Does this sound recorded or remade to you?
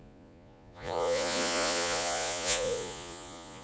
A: remade